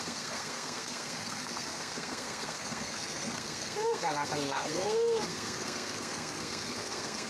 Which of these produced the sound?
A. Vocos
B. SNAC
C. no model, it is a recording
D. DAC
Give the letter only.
B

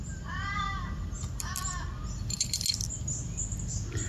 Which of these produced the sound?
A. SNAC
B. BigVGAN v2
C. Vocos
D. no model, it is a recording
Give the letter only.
D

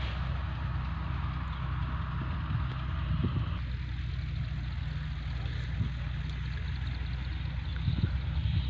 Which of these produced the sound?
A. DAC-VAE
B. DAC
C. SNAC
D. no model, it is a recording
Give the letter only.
D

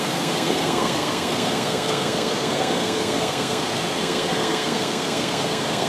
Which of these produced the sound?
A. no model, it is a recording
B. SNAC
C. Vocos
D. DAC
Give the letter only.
B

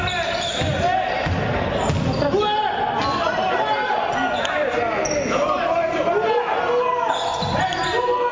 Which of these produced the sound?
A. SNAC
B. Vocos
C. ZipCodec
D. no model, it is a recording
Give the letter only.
D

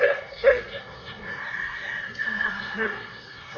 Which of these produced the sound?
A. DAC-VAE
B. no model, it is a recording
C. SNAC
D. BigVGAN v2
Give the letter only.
C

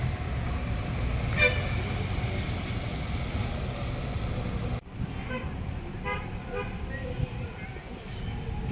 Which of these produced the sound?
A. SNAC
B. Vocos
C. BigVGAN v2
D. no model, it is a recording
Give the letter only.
D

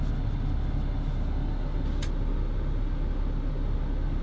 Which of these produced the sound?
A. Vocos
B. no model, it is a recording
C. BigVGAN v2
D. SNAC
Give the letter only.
B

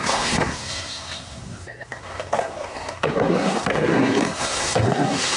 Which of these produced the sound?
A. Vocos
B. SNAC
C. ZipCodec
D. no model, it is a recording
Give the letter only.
B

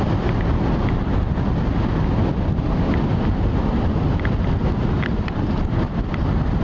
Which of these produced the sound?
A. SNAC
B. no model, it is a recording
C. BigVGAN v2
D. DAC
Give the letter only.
B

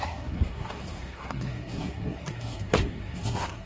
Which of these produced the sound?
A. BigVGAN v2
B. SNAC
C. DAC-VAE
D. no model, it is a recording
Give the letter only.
B